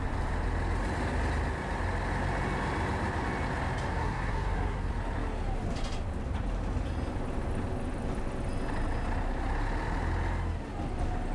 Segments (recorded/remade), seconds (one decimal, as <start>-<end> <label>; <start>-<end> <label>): 0.0-3.9 recorded; 3.9-4.9 remade; 4.9-11.3 recorded